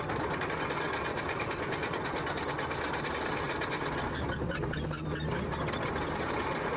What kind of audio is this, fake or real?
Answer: real